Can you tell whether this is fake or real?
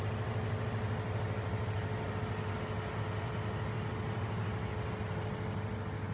real